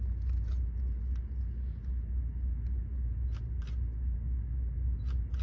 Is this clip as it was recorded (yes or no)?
yes